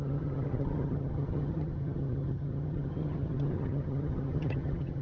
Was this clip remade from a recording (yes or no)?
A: yes